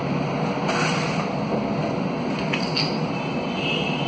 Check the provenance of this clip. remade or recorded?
recorded